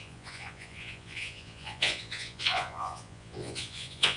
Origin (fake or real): fake